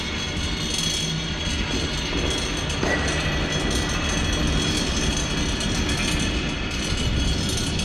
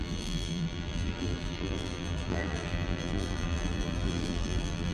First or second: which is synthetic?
second